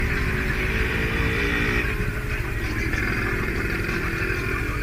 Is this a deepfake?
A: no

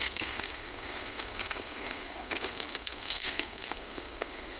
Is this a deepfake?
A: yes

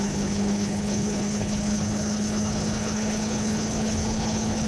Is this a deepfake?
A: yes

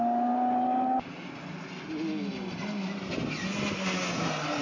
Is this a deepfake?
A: no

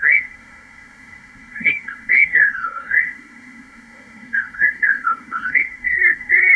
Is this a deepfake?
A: yes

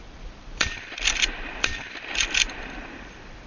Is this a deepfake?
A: yes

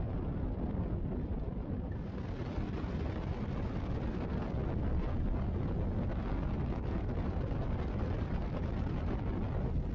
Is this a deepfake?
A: no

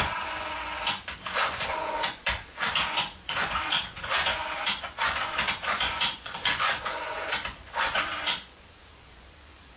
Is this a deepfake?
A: yes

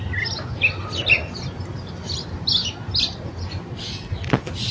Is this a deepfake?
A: no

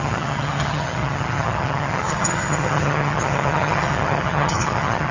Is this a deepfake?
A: yes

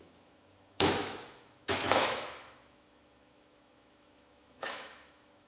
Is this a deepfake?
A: yes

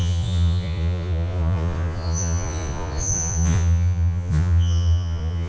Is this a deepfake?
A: yes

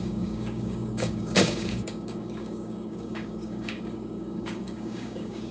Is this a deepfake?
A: yes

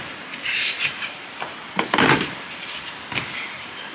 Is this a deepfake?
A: yes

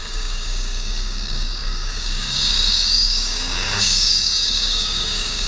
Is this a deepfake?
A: yes